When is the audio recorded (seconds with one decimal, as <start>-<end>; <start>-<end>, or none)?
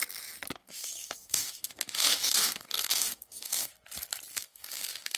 0.0-0.6; 3.7-4.3